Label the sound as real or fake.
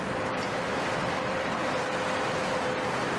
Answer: real